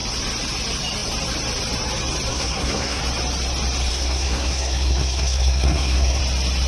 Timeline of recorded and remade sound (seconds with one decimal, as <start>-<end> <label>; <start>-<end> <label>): 0.0-2.3 recorded; 2.3-3.0 remade; 3.0-3.9 recorded; 3.9-6.2 remade; 6.2-6.7 recorded